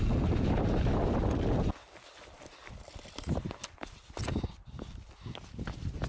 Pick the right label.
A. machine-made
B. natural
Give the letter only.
B